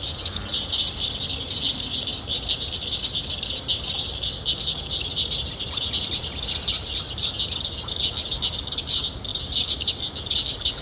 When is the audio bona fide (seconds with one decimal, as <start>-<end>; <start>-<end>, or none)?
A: none